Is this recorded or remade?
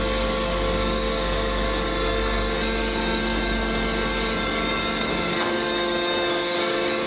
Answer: remade